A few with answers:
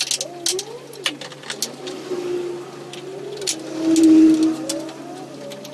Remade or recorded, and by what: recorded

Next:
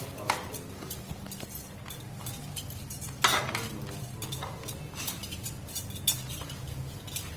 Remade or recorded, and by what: recorded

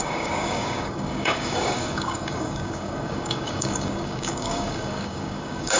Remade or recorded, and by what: remade, codec, DAC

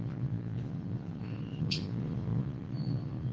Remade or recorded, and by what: remade, vocoder, Vocos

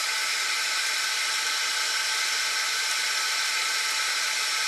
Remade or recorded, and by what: recorded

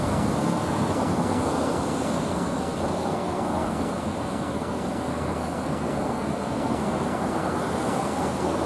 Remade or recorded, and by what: remade, codec, SNAC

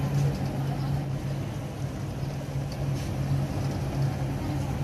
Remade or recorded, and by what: recorded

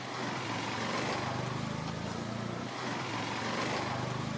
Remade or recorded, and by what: recorded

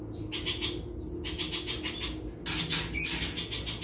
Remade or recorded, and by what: recorded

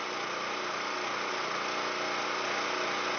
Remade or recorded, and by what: recorded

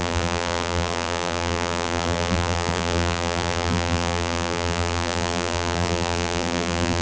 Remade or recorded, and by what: remade, vocoder, BigVGAN v2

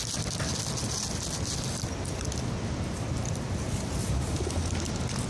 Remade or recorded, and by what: recorded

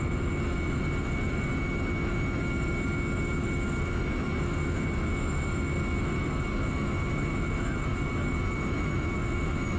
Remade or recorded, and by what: remade, autoencoder, DAC-VAE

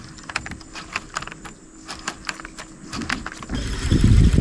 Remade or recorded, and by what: recorded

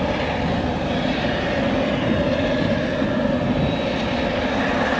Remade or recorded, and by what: recorded